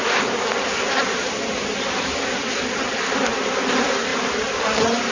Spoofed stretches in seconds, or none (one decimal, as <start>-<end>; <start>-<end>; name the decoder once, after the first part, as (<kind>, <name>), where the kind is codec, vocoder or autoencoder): none